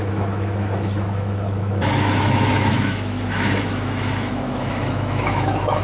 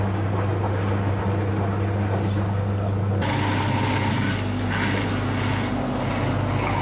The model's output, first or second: first